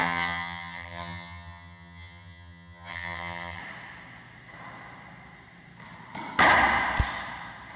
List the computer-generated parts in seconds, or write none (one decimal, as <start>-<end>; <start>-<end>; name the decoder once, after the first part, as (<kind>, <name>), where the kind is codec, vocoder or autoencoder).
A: 0.0-3.6 (vocoder, HiFi-GAN)